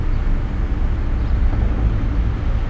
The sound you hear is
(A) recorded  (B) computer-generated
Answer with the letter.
A